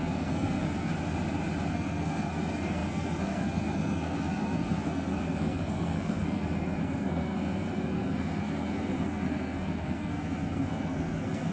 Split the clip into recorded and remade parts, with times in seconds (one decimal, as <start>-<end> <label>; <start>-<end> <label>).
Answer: 0.0-0.9 remade; 0.9-1.7 recorded; 1.7-11.5 remade